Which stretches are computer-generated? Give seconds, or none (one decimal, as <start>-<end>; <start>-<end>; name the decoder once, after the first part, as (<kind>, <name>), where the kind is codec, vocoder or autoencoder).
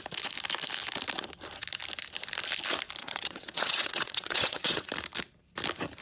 3.0-4.9 (vocoder, WaveNeXt)